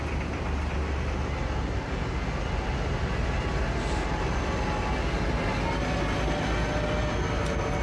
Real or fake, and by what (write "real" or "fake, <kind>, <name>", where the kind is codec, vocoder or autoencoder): real